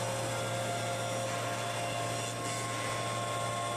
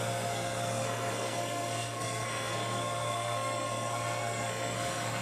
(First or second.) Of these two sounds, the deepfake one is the second